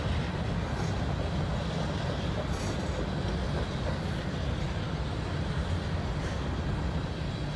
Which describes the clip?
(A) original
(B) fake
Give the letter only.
A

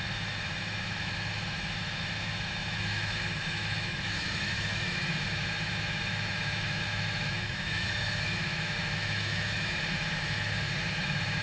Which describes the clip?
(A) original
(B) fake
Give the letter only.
B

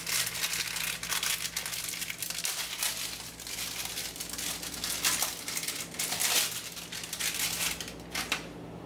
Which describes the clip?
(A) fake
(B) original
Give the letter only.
B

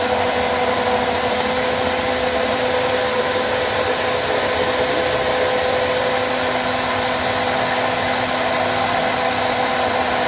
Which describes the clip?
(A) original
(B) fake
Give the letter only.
A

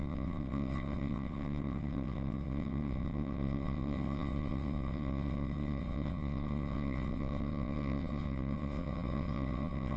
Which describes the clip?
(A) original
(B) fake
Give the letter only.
B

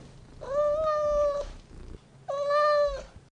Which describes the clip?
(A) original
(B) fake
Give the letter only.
A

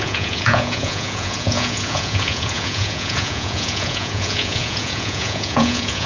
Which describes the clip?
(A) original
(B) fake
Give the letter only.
B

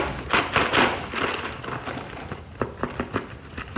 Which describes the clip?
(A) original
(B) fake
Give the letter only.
A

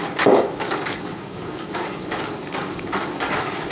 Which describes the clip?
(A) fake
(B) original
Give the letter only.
A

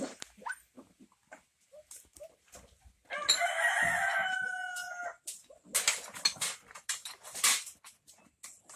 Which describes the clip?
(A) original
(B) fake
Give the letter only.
A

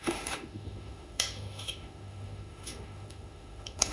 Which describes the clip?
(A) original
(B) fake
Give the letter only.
B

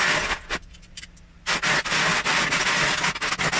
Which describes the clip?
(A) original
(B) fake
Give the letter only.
A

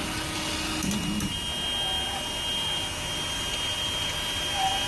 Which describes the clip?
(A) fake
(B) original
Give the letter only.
B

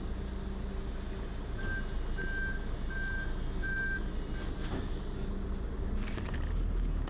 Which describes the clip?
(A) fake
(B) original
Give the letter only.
B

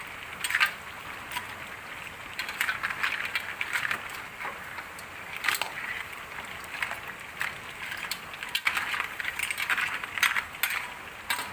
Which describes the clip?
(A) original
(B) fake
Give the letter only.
A